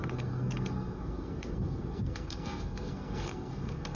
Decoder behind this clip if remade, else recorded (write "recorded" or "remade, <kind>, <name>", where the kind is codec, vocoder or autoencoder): remade, codec, SNAC